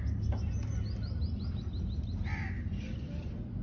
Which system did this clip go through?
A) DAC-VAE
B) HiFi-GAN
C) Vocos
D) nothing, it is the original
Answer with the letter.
D